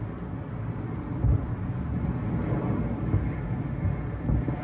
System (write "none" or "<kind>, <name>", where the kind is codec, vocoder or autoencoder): none